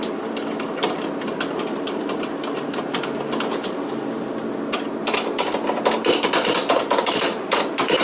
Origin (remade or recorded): recorded